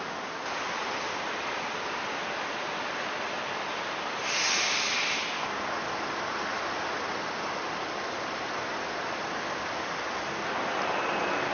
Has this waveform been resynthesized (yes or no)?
no